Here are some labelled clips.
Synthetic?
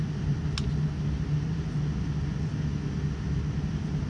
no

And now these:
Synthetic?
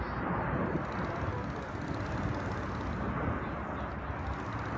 no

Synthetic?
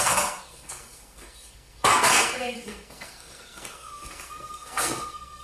yes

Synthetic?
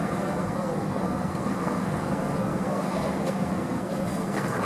yes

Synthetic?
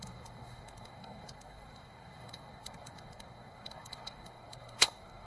yes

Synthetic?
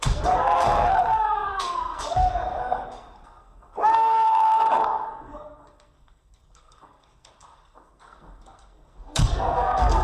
yes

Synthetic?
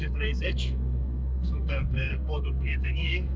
yes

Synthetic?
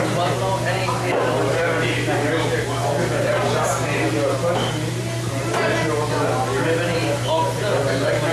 no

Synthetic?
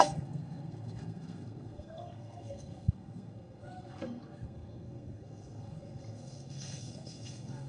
yes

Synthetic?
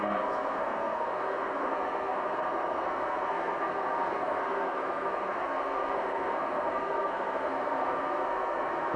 yes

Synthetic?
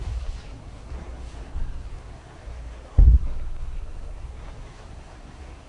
yes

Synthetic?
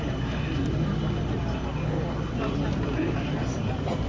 no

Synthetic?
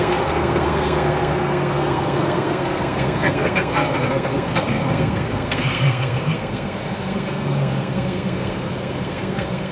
yes